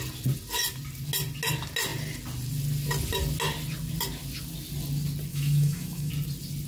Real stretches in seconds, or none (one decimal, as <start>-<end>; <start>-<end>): 0.0-5.3; 6.1-6.7